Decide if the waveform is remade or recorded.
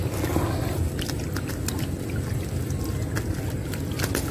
recorded